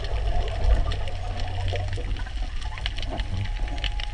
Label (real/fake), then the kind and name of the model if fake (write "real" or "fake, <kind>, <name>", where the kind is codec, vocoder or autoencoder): real